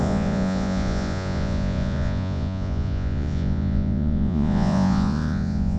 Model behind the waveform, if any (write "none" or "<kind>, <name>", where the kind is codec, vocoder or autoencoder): vocoder, Vocos